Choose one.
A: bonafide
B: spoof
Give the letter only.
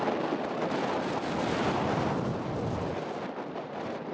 A